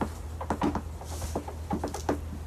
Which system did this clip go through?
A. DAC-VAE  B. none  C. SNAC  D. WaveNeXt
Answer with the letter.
B